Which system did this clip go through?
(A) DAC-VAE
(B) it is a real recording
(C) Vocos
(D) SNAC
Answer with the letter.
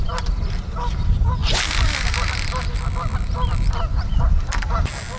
B